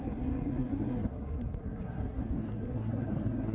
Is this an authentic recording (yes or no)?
no